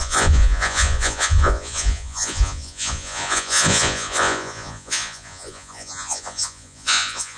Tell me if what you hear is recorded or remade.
remade